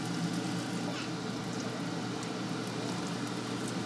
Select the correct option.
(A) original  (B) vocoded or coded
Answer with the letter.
A